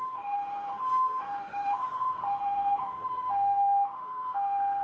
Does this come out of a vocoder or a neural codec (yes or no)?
yes